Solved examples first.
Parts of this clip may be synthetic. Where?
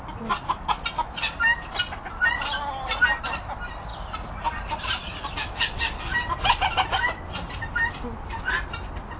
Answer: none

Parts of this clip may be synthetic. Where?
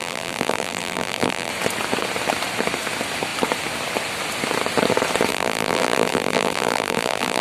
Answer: 0.0-1.5 (vocoder, BigVGAN v2); 5.3-7.4